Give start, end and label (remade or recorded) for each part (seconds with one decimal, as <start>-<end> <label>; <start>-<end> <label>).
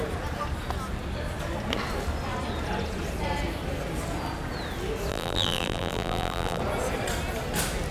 0.0-5.1 recorded; 5.1-6.6 remade; 6.6-7.9 recorded